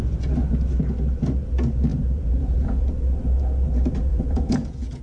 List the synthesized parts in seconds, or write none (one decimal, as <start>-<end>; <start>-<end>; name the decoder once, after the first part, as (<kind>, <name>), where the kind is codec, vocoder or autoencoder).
1.9-2.8 (vocoder, Vocos); 4.1-5.0